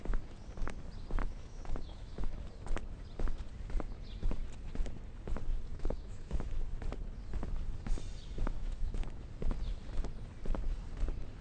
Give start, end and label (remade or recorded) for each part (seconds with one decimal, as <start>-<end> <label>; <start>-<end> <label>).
0.0-1.2 recorded; 1.2-2.2 remade; 2.2-5.7 recorded; 5.7-6.5 remade; 6.5-8.6 recorded; 8.6-9.2 remade; 9.2-11.4 recorded